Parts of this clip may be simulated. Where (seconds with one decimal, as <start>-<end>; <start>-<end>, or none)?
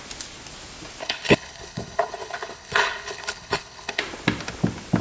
1.0-4.0